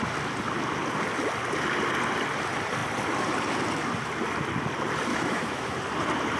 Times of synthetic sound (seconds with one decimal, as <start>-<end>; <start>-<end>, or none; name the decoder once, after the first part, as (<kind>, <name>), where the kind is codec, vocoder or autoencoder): 5.1-5.8 (autoencoder, DAC-VAE)